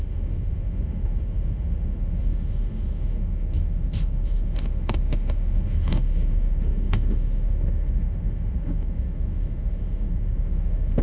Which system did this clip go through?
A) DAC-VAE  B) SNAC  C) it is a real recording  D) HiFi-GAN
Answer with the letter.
A